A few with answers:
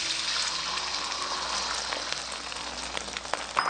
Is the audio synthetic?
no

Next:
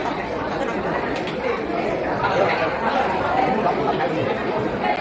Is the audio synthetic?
no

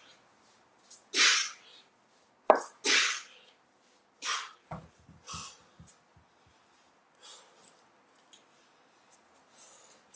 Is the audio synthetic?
no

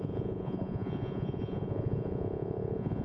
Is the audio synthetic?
yes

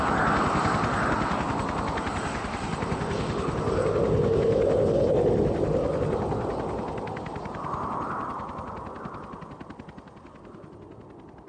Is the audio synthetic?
no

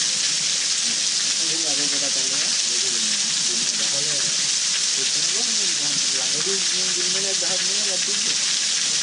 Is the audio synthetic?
no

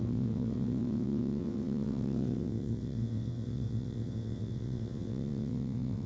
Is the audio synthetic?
yes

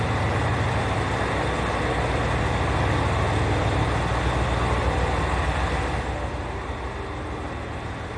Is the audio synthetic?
no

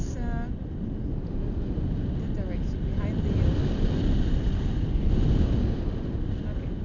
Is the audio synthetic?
no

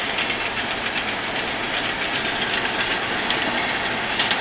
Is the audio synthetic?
no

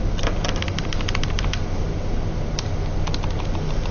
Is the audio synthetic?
no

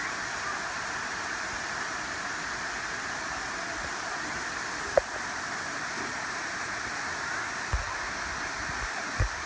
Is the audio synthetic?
no